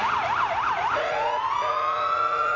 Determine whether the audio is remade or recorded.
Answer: remade